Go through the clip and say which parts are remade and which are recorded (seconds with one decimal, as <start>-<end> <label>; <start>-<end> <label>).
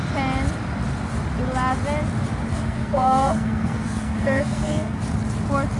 0.0-2.5 recorded; 2.5-5.0 remade; 5.0-5.8 recorded